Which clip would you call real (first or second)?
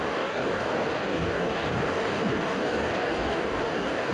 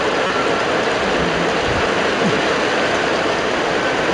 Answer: second